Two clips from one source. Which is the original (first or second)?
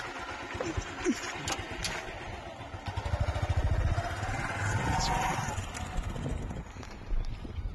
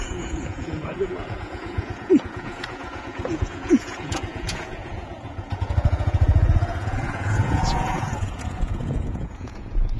first